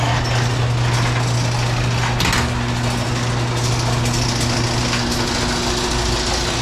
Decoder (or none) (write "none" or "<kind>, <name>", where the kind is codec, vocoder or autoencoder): none